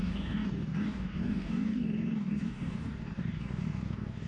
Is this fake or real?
fake